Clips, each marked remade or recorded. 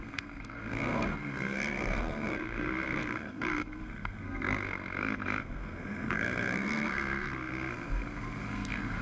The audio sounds remade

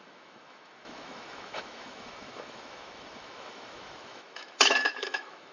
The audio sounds remade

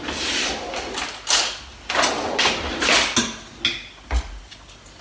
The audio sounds recorded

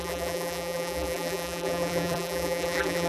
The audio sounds remade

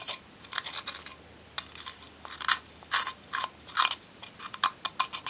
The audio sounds recorded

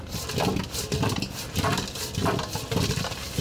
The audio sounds recorded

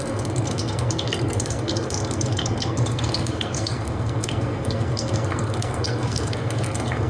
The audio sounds remade